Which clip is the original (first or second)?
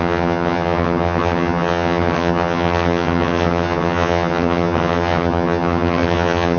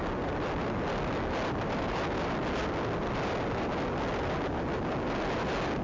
second